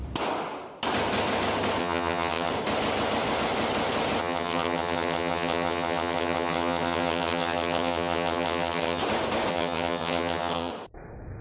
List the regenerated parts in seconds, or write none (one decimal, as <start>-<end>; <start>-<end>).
1.8-2.5; 4.2-9.0; 9.5-10.7